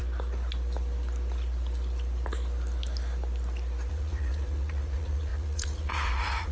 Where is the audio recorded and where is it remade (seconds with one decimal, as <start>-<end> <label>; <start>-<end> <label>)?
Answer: 0.0-3.9 recorded; 3.9-6.5 remade